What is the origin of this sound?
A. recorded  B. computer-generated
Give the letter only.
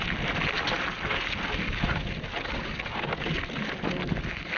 A